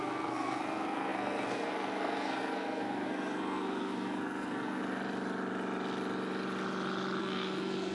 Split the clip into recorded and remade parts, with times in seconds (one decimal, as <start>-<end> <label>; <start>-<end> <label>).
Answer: 0.0-4.8 remade; 4.8-7.2 recorded; 7.2-7.9 remade